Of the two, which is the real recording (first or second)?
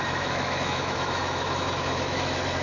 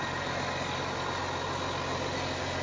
second